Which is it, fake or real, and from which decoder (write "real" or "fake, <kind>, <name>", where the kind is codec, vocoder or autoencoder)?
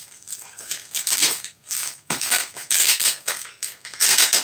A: fake, codec, SNAC